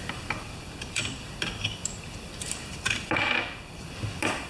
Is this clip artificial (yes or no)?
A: yes